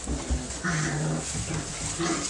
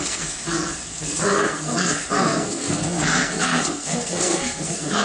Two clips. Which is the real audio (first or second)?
first